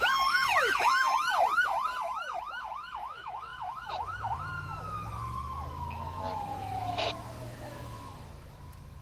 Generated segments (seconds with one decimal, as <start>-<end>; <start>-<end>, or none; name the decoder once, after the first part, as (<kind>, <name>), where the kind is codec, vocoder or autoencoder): 0.0-9.0 (autoencoder, DAC-VAE)